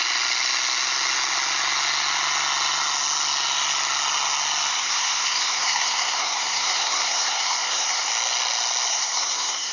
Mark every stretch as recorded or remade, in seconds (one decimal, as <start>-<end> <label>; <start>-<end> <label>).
0.0-4.7 recorded; 4.7-8.1 remade; 8.1-8.9 recorded; 8.9-9.7 remade

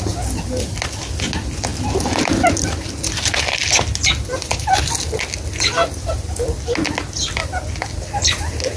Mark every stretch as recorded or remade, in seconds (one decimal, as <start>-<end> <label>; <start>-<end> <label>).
0.0-8.8 recorded

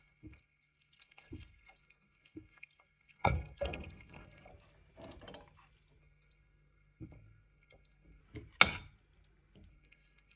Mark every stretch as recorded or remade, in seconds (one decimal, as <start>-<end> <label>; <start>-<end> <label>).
0.0-4.5 remade; 4.5-6.0 recorded; 6.0-8.2 remade; 8.2-9.7 recorded; 9.7-10.4 remade

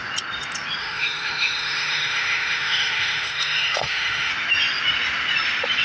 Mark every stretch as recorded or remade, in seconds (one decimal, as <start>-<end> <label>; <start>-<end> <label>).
0.0-0.8 recorded; 0.8-4.3 remade; 4.3-5.8 recorded

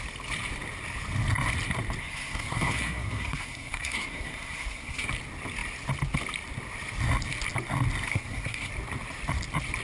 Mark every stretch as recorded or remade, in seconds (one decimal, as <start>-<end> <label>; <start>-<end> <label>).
0.0-2.0 recorded; 2.0-5.1 remade; 5.1-8.1 recorded; 8.1-8.7 remade; 8.7-9.8 recorded

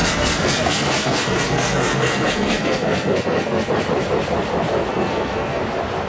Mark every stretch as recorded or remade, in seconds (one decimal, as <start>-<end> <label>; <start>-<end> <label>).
0.0-3.7 remade; 3.7-4.9 recorded; 4.9-5.6 remade; 5.6-6.1 recorded

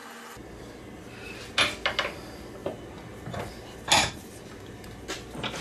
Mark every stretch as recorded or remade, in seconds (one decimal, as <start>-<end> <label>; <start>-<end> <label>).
0.0-5.6 recorded

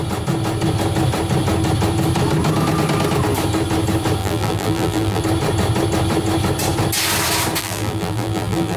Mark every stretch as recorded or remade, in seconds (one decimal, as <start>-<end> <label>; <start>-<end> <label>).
0.0-4.2 recorded; 4.2-5.2 remade; 5.2-7.6 recorded; 7.6-8.8 remade